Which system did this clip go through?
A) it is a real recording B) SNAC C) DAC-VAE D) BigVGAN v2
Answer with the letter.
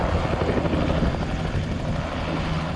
A